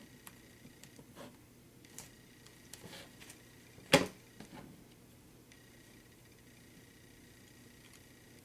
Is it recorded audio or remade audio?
recorded